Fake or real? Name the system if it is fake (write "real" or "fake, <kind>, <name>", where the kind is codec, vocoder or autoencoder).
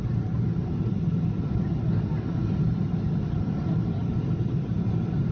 real